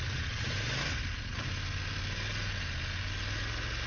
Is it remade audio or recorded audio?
recorded